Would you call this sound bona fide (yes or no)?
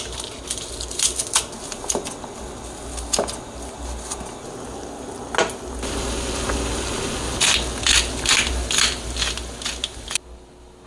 yes